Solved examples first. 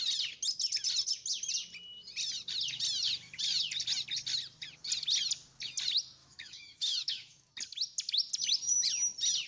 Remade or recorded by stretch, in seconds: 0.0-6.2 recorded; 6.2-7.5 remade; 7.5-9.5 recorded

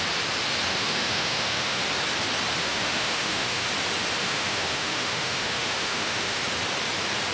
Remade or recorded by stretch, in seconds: 0.0-0.7 recorded; 0.7-1.8 remade; 1.8-2.6 recorded; 2.6-3.7 remade; 3.7-4.2 recorded; 4.2-6.4 remade; 6.4-7.3 recorded

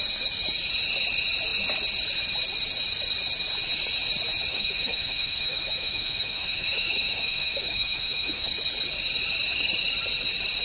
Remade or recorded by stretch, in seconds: 0.0-4.5 recorded; 4.5-8.5 remade; 8.5-10.6 recorded

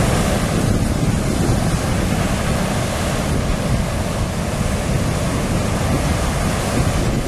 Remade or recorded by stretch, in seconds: 0.0-7.3 recorded

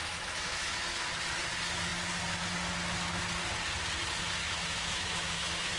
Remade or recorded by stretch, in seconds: 0.0-1.1 remade; 1.1-4.4 recorded; 4.4-5.8 remade

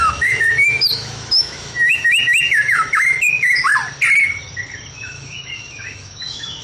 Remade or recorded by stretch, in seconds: 0.0-3.7 remade; 3.7-4.9 recorded; 4.9-6.6 remade

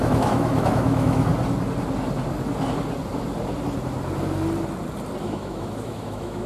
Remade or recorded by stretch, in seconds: 0.0-1.3 remade; 1.3-5.2 recorded; 5.2-6.5 remade

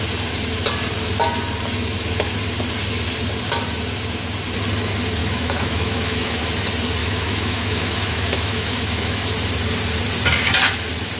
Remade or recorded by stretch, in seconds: 0.0-5.2 recorded; 5.2-6.4 remade; 6.4-7.0 recorded; 7.0-9.2 remade; 9.2-11.2 recorded